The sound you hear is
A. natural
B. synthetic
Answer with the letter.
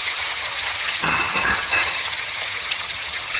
B